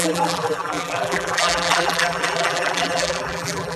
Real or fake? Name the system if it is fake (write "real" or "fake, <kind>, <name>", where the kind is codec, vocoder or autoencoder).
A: fake, vocoder, BigVGAN v2